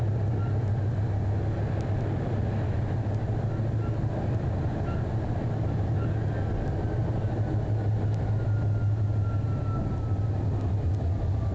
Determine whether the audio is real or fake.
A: real